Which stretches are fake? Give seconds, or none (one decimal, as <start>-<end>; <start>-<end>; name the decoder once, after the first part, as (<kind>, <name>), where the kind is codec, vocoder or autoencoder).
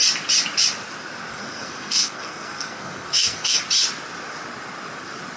1.3-3.6 (codec, SNAC)